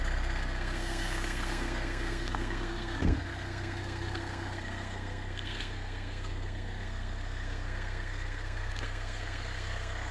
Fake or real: fake